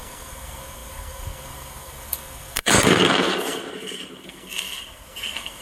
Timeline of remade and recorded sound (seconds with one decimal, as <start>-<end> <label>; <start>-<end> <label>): 0.0-5.6 remade